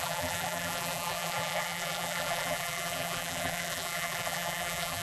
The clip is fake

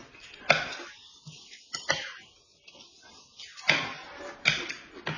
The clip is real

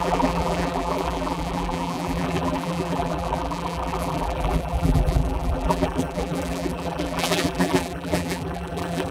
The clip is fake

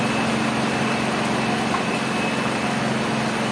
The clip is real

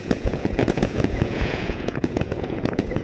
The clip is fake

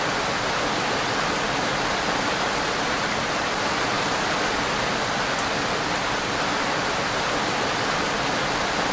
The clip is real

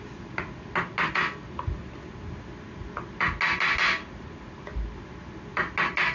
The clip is real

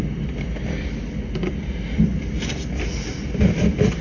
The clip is real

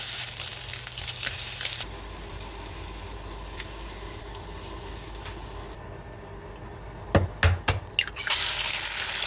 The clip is real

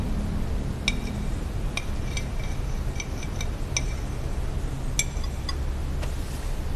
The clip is real